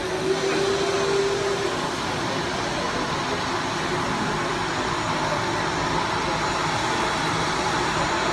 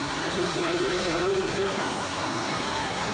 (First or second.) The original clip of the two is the first